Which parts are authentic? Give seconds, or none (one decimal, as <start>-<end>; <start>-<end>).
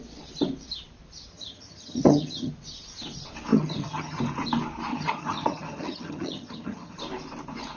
0.0-1.3; 2.5-3.5; 4.2-4.9; 7.0-7.8